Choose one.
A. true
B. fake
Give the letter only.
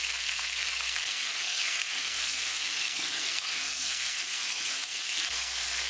B